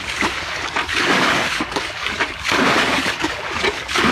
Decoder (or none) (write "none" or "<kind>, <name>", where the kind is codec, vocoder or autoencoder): codec, DAC